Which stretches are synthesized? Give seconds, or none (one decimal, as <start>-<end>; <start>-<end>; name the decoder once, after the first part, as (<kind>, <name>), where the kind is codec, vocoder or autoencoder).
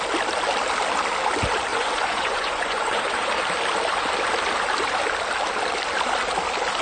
1.7-3.0 (vocoder, Vocos)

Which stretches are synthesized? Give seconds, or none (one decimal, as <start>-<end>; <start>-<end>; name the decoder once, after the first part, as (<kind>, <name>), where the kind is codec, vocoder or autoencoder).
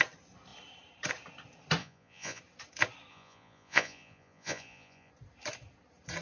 1.8-2.4 (vocoder, Vocos); 3.1-5.1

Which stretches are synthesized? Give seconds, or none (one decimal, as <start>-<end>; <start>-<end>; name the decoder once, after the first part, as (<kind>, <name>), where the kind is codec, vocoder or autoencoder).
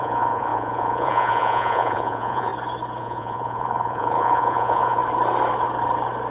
0.0-2.5 (vocoder, Vocos); 3.0-5.0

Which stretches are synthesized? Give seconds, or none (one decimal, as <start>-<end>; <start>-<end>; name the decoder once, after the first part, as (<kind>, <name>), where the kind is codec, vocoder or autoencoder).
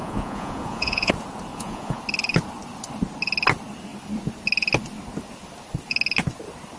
0.0-1.1 (vocoder, Vocos); 1.5-2.0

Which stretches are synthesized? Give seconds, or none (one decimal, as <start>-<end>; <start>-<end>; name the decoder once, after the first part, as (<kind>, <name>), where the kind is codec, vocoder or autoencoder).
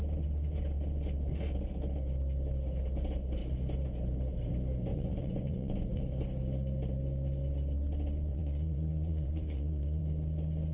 4.9-6.0 (vocoder, Vocos); 8.3-10.0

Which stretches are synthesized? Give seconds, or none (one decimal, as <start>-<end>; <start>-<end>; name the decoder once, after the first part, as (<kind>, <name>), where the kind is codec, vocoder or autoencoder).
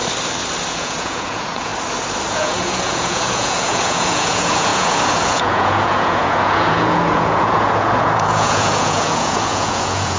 0.7-1.7 (vocoder, Vocos); 2.3-10.2